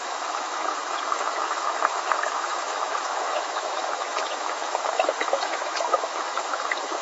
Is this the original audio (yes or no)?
no